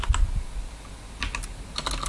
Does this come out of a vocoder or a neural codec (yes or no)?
no